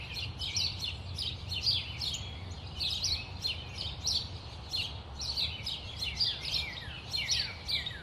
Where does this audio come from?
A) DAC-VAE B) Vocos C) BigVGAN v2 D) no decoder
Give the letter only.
D